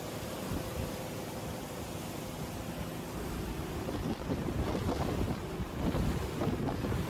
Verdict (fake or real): real